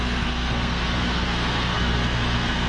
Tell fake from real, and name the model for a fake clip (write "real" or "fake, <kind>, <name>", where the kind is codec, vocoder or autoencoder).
fake, codec, SNAC